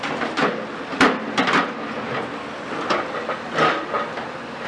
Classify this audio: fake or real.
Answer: real